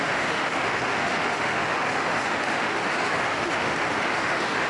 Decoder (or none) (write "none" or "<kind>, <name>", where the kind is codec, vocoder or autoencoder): autoencoder, DAC-VAE